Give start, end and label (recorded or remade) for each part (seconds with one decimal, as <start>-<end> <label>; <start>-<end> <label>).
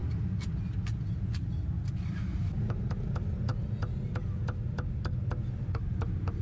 0.0-6.4 recorded